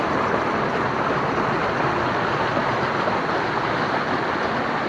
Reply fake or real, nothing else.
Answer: real